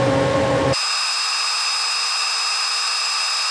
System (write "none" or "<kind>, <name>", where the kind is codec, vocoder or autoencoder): none